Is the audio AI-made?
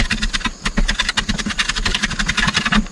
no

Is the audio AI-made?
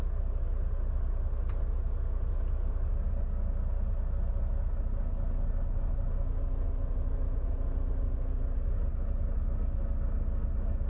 no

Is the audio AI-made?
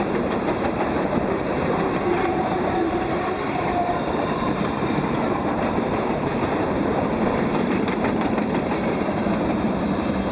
yes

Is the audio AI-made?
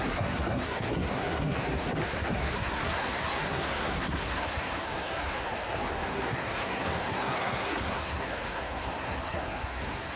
yes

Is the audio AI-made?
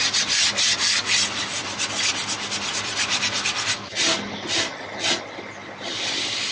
no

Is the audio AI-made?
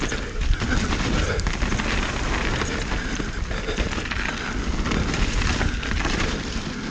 no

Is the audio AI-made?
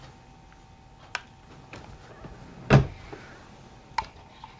no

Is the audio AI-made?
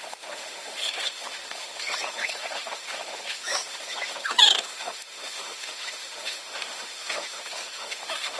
yes